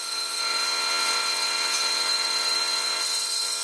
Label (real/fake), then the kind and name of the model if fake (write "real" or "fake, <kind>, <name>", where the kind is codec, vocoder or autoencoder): fake, vocoder, WaveNeXt